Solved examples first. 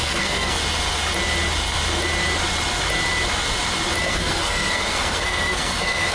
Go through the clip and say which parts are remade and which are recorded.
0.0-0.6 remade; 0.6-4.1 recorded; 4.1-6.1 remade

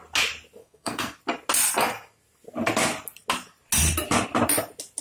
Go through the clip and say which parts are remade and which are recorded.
0.0-0.6 recorded; 0.6-1.2 remade; 1.2-5.0 recorded